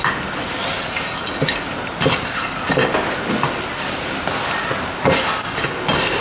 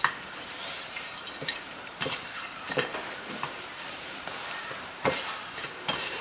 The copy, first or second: second